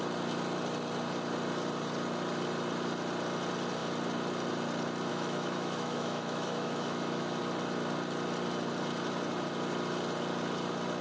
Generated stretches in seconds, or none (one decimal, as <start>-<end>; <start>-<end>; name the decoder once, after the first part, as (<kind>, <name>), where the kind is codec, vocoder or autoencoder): 5.1-7.4 (autoencoder, DAC-VAE)